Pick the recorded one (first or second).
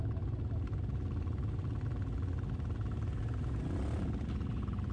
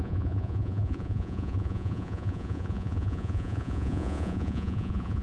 first